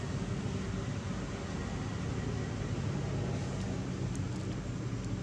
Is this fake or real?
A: real